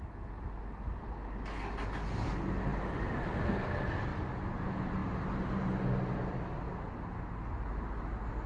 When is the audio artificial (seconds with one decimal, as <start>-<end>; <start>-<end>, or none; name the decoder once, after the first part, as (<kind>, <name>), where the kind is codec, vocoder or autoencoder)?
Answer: none